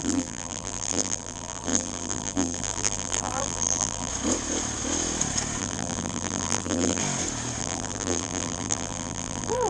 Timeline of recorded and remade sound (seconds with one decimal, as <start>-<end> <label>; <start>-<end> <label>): 0.0-4.1 remade; 4.1-5.6 recorded; 5.6-7.0 remade; 7.0-7.6 recorded; 7.6-9.7 remade